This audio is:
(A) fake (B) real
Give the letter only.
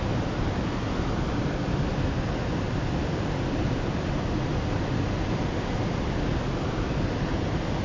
B